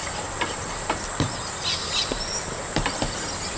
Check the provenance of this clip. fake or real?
real